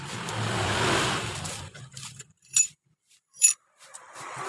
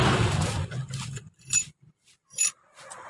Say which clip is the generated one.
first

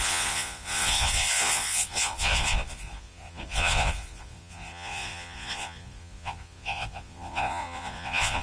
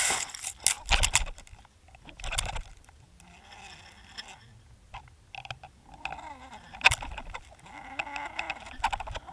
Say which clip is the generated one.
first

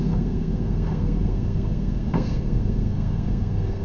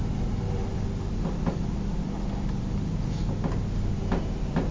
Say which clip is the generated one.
first